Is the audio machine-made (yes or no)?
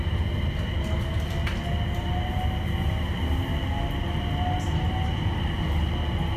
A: no